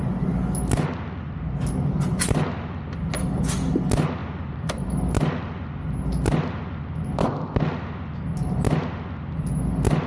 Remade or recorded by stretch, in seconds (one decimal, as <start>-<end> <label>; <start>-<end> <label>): 0.0-4.2 recorded; 4.2-4.9 remade; 4.9-10.1 recorded